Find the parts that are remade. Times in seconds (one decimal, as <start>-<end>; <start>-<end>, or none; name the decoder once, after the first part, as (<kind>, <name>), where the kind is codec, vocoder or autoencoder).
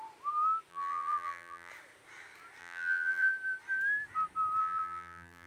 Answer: 0.7-1.7 (vocoder, BigVGAN v2); 2.6-3.3; 4.6-5.5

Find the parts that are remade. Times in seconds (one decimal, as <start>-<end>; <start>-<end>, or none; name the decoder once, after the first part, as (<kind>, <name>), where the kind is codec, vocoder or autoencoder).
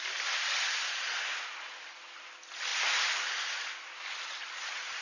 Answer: none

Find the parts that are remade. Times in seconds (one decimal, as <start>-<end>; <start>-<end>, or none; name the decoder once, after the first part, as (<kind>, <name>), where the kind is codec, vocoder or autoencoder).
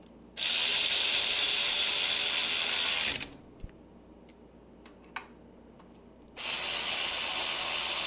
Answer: 0.7-1.9 (vocoder, BigVGAN v2)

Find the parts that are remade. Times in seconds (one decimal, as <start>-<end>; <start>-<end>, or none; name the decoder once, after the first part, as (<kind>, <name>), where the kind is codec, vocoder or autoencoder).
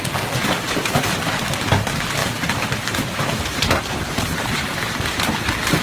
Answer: 0.4-1.0 (vocoder, BigVGAN v2); 2.2-4.9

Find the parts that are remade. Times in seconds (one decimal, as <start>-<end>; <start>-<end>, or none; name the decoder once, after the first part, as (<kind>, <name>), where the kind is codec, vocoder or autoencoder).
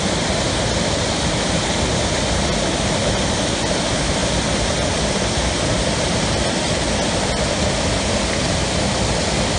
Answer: none